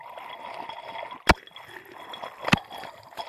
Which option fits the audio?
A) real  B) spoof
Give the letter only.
A